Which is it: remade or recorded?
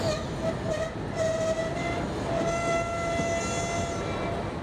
recorded